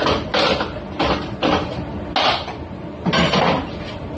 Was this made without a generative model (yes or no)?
yes